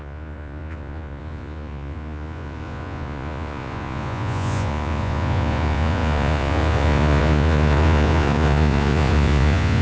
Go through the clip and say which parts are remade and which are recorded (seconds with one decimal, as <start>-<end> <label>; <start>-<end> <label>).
0.0-9.8 remade